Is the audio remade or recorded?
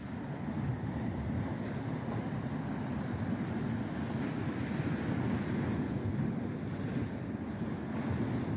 recorded